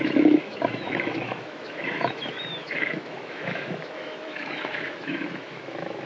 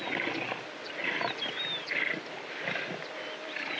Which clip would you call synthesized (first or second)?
first